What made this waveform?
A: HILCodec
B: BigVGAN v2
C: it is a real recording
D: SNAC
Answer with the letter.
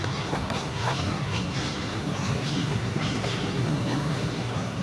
D